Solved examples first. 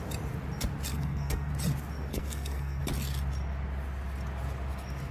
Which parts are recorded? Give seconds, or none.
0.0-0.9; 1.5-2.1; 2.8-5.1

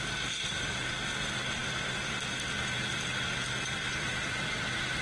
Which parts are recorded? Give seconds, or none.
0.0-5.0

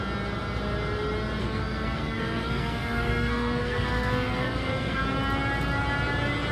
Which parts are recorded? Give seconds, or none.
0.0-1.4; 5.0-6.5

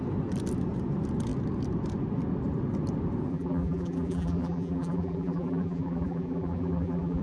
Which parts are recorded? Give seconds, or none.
0.0-3.3

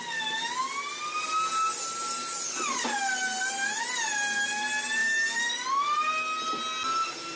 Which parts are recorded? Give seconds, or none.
0.0-5.0; 5.7-7.4

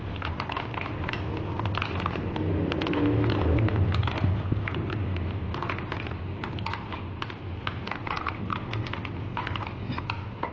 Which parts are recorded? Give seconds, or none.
0.0-10.5

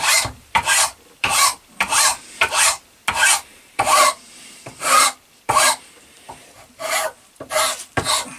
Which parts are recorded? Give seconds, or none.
2.1-3.5